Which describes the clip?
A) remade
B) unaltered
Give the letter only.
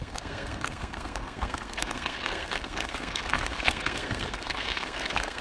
A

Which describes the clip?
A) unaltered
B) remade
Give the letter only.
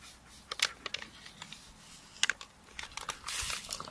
A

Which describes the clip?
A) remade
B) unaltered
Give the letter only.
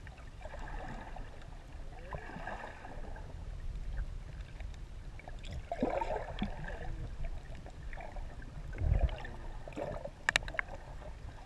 B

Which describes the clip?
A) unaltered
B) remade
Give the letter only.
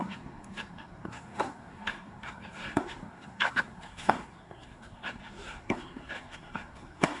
B